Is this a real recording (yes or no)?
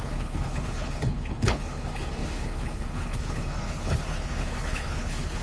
no